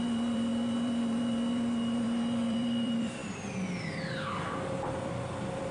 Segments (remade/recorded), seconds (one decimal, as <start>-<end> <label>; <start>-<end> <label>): 0.0-3.2 remade; 3.2-4.2 recorded; 4.2-5.7 remade

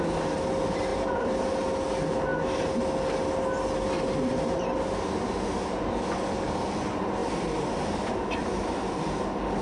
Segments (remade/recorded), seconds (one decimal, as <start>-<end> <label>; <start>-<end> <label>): 0.0-0.9 recorded; 0.9-1.4 remade; 1.4-7.2 recorded; 7.2-9.2 remade; 9.2-9.6 recorded

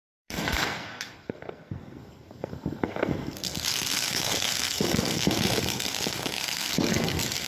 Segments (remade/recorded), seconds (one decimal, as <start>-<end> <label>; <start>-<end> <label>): 0.0-7.5 remade

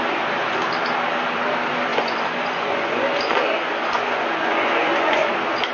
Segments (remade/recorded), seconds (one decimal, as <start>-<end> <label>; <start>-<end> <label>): 0.0-1.9 recorded; 1.9-5.3 remade; 5.3-5.7 recorded

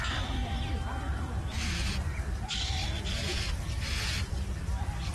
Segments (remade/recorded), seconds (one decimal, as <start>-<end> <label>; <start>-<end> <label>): 0.0-5.1 remade